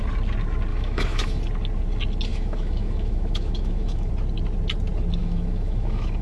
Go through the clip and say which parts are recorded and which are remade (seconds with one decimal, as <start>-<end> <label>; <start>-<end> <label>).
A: 0.0-0.7 recorded; 0.7-1.4 remade; 1.4-2.3 recorded; 2.3-4.1 remade; 4.1-5.2 recorded; 5.2-6.2 remade